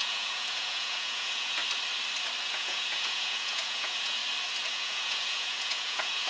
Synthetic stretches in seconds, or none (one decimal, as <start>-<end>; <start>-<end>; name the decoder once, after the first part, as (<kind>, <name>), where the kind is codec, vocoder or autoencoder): 0.0-1.6 (vocoder, Vocos); 2.4-4.2; 4.7-6.3

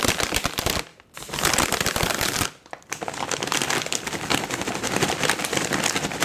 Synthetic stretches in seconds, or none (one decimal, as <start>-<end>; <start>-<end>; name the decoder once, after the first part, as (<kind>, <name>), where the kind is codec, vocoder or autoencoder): none